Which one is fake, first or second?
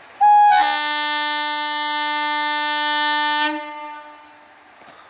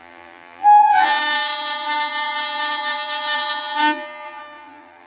second